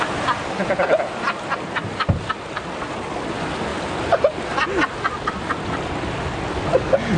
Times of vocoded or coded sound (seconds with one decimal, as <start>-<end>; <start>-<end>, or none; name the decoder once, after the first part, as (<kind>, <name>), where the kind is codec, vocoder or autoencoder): none